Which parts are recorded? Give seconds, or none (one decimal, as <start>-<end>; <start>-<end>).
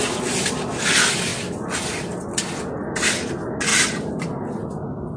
0.0-5.2